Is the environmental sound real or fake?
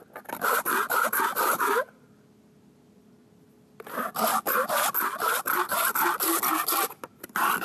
real